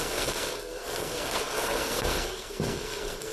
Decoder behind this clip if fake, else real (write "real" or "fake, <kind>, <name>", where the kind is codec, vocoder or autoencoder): fake, codec, SNAC